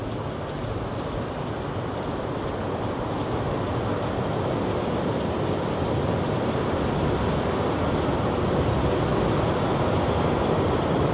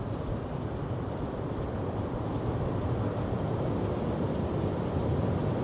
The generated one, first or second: second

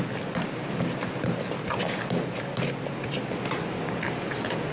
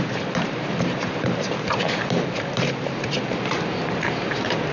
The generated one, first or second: second